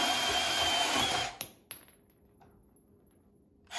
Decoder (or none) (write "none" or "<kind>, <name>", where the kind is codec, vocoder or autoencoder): none